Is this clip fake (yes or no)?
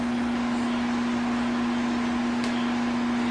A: no